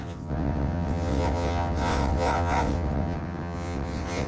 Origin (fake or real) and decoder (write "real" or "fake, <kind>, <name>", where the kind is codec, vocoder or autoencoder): fake, vocoder, WaveNeXt